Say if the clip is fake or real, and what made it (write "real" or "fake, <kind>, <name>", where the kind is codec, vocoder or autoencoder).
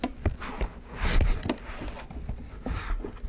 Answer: real